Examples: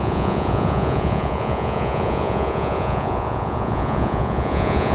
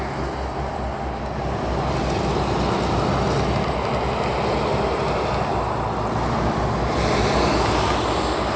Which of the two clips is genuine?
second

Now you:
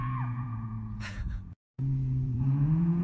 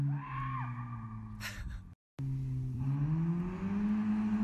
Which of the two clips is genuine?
second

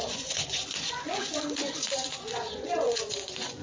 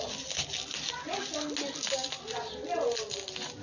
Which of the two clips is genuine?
second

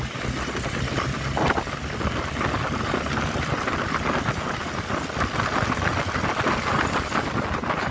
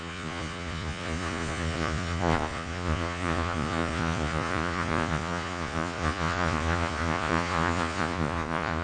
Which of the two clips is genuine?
first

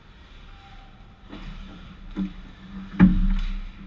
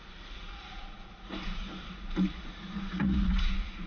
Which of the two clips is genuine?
first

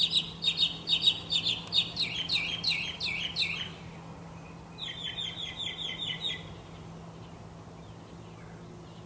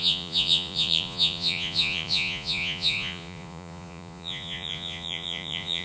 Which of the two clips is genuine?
first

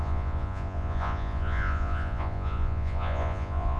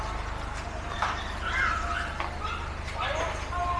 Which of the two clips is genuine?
second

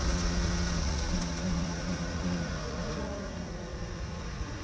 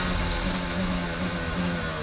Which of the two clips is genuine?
second